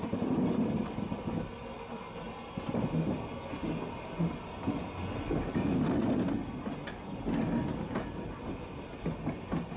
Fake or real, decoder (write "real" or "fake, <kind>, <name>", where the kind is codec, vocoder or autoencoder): real